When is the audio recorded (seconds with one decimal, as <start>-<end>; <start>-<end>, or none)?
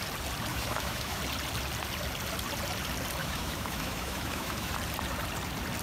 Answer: 0.0-0.5; 1.2-3.2; 4.7-5.8